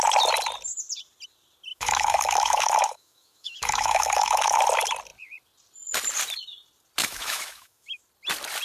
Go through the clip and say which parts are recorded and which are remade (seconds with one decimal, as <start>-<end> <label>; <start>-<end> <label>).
0.0-1.7 recorded; 1.7-4.6 remade; 4.6-7.0 recorded; 7.0-8.0 remade; 8.0-8.6 recorded